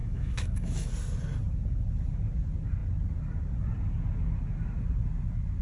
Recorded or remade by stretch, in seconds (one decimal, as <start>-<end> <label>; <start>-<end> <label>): 0.0-0.9 remade; 0.9-5.6 recorded